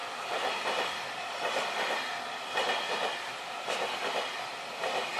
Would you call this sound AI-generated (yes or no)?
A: no